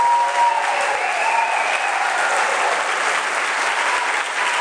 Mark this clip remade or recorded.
recorded